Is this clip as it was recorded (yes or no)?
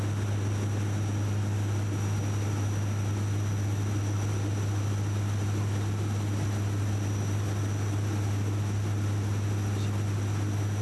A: yes